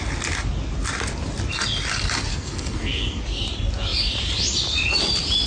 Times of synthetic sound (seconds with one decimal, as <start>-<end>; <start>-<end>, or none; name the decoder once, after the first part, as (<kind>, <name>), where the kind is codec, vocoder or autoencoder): 2.3-3.2 (codec, SNAC)